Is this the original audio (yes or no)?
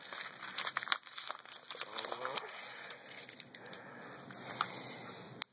yes